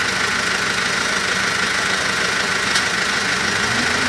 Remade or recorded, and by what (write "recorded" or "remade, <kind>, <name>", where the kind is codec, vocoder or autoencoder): remade, vocoder, Vocos